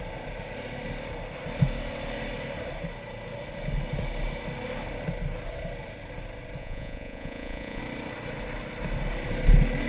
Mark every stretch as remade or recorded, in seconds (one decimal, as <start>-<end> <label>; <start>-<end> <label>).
0.0-6.6 recorded; 6.6-7.8 remade; 7.8-9.9 recorded